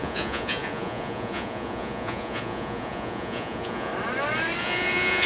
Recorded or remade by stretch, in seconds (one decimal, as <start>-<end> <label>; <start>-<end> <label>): 0.0-3.9 remade; 3.9-4.6 recorded; 4.6-5.3 remade